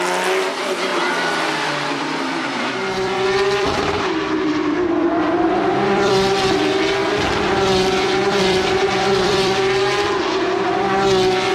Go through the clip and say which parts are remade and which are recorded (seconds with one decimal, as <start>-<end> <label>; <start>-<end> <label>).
0.0-0.9 recorded; 0.9-6.1 remade; 6.1-7.0 recorded; 7.0-9.7 remade; 9.7-11.5 recorded